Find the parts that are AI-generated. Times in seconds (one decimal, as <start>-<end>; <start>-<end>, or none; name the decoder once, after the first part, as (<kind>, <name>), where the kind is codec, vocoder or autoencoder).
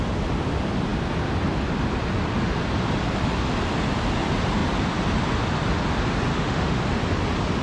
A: 6.3-6.8 (autoencoder, DAC-VAE)